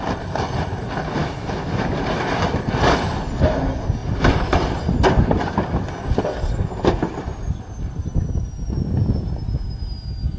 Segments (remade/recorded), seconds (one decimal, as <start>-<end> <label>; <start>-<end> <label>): 0.0-1.2 recorded; 1.2-1.8 remade; 1.8-10.4 recorded